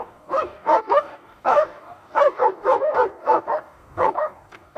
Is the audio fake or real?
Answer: fake